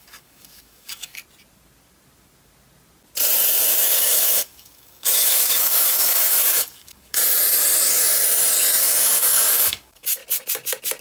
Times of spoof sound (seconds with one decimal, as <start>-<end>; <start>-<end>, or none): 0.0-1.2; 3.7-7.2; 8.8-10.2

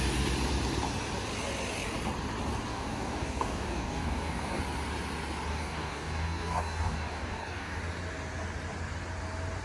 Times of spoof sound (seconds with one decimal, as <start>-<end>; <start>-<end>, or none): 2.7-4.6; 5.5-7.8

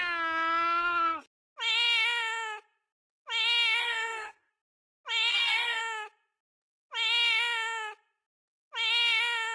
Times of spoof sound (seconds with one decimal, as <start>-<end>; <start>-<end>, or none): 3.8-4.5; 5.3-5.8

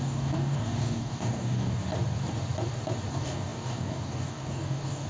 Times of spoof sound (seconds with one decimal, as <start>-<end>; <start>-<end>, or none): 0.0-1.8; 3.1-5.1

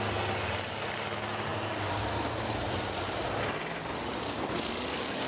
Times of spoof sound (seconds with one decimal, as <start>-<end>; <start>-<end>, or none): none

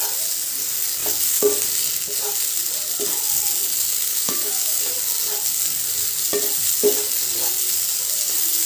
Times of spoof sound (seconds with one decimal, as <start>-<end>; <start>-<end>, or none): 4.1-4.8